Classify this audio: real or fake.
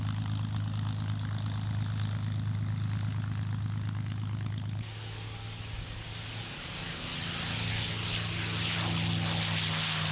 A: real